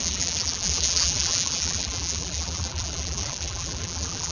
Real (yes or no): no